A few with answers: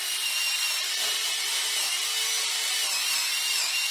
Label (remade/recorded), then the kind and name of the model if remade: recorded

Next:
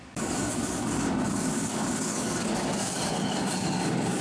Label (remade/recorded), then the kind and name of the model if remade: remade, codec, DAC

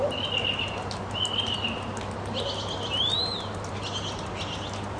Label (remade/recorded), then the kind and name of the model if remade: recorded